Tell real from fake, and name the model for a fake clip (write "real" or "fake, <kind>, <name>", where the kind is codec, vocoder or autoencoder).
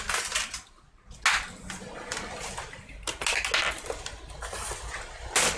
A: real